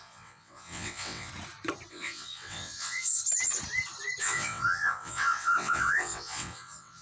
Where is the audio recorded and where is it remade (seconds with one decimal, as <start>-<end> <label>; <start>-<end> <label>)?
0.0-1.3 remade; 1.3-1.9 recorded; 1.9-3.2 remade; 3.2-4.2 recorded; 4.2-7.0 remade